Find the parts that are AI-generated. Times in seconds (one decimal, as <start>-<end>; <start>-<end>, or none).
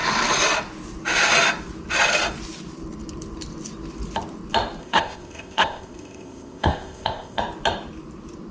4.8-7.4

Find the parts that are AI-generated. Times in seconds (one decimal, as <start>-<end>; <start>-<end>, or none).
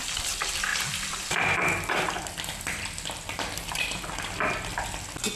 none